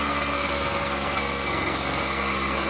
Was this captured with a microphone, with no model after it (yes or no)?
no